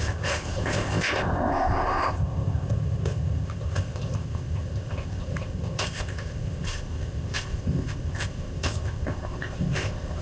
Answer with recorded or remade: remade